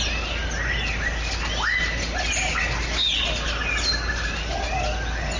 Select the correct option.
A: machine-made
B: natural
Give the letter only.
B